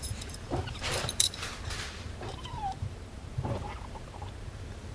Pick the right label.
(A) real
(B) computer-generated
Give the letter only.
B